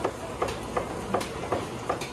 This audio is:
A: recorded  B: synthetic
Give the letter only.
A